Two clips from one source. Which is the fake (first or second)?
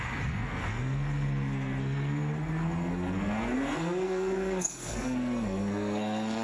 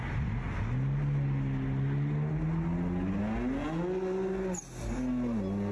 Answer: first